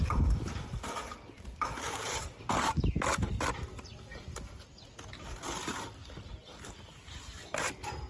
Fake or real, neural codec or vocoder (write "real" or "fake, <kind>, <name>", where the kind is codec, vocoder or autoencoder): real